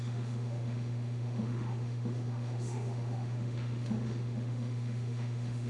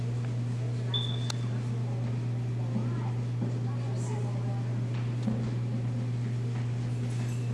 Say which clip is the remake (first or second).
first